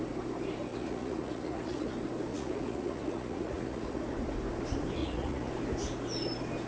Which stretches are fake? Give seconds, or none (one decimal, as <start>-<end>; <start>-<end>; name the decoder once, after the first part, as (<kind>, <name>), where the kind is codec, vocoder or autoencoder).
0.7-1.9 (vocoder, Vocos); 2.3-4.0; 5.0-5.5